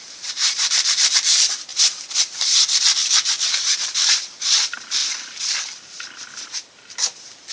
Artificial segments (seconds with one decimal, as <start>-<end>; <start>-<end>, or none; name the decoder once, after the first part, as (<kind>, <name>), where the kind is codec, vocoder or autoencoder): 0.0-7.5 (vocoder, BigVGAN v2)